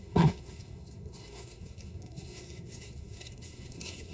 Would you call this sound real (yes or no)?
no